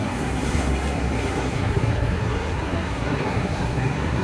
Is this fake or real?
fake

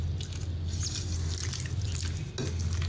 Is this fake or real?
real